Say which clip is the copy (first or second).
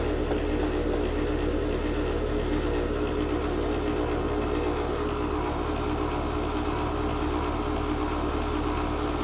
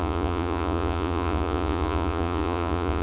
second